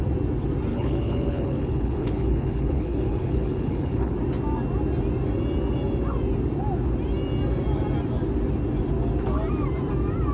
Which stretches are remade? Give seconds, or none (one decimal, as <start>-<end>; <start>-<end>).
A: 0.7-4.1